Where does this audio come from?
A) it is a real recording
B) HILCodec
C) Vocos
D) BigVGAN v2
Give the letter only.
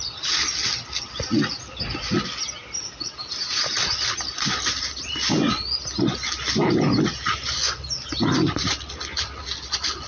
A